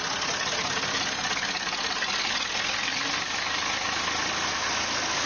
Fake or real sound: real